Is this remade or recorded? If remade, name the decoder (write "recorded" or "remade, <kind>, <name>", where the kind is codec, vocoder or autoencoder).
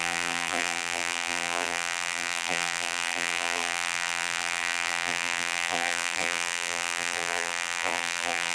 remade, vocoder, BigVGAN v2